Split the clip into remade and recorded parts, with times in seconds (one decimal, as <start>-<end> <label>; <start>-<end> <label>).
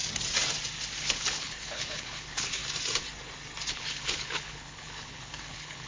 0.0-1.0 recorded; 1.0-2.6 remade; 2.6-3.7 recorded; 3.7-5.9 remade